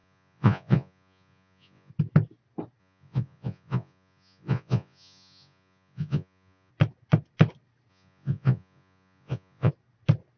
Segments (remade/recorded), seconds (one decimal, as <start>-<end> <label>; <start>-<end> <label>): 0.0-1.9 remade; 1.9-2.8 recorded; 2.8-6.7 remade; 6.7-7.9 recorded; 7.9-9.7 remade; 9.7-10.4 recorded